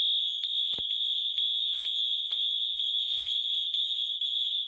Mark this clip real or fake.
fake